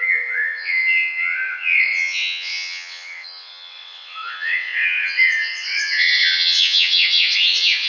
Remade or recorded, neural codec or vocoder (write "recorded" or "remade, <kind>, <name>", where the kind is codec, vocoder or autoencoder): remade, vocoder, WaveNeXt